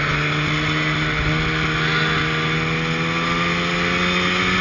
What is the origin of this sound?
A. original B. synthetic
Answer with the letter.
A